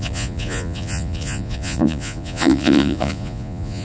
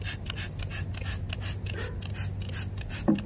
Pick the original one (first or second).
second